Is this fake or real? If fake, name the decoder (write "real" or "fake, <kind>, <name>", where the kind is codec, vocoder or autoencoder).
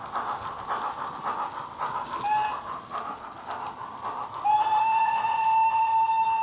real